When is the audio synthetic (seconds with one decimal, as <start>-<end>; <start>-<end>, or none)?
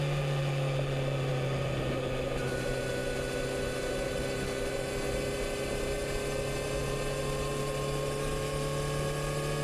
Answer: none